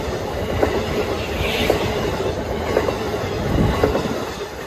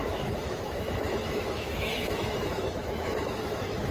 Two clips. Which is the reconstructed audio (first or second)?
second